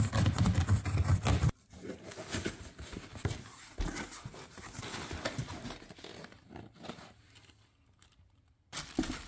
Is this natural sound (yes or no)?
yes